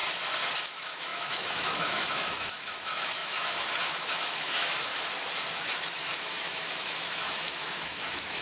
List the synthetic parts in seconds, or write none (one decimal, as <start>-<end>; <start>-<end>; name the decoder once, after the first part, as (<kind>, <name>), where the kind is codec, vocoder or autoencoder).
0.6-4.9 (autoencoder, DAC-VAE); 5.5-8.4